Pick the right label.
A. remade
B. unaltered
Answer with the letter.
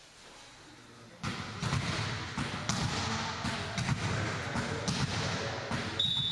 B